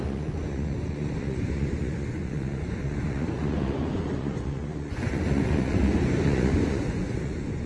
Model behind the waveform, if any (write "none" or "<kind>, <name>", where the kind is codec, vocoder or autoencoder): vocoder, Vocos